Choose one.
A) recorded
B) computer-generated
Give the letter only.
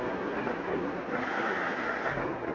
B